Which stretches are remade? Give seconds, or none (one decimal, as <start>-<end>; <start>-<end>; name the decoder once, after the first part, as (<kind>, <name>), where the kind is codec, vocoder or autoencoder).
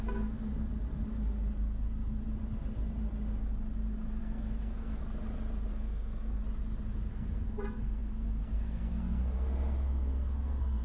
0.0-0.5 (codec, SNAC); 4.2-5.0; 5.7-6.4; 7.1-10.8